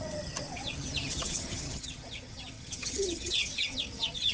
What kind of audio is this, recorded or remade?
remade